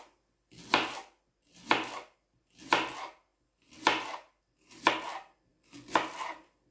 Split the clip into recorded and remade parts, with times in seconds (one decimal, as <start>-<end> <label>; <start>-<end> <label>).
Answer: 0.0-6.7 recorded